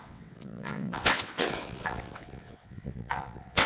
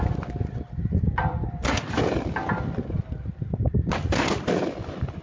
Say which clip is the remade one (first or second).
first